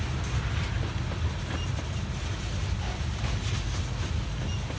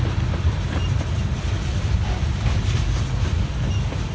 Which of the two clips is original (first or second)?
first